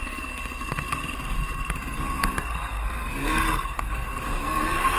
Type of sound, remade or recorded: remade